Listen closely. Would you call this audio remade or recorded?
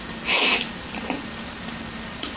recorded